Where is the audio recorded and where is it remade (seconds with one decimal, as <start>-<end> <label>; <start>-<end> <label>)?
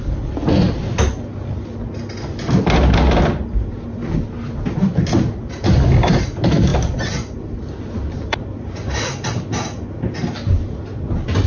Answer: 0.0-6.7 recorded; 6.7-9.4 remade; 9.4-11.5 recorded